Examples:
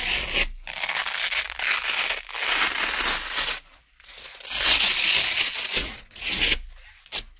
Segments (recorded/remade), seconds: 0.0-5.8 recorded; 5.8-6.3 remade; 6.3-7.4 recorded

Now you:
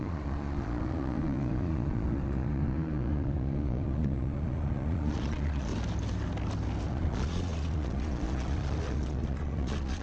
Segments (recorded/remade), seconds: 0.0-5.7 remade; 5.7-6.9 recorded; 6.9-10.0 remade